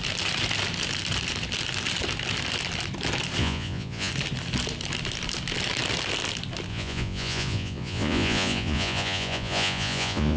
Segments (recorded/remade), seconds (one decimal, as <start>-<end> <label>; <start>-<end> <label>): 0.0-3.4 recorded; 3.4-4.1 remade; 4.1-6.7 recorded; 6.7-10.4 remade